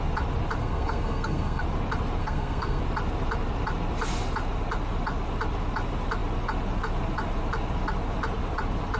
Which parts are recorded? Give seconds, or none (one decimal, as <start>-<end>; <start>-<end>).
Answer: 0.0-0.6; 1.6-2.2; 2.8-9.0